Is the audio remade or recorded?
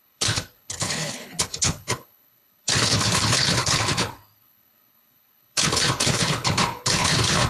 remade